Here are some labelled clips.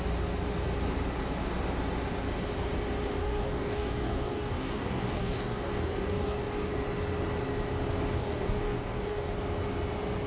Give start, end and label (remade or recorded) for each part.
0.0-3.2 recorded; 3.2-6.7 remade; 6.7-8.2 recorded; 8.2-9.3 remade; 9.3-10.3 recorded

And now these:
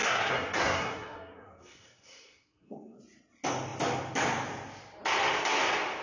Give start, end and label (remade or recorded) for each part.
0.0-3.0 remade; 3.0-6.0 recorded